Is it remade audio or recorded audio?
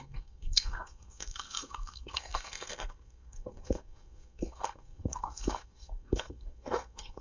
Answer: remade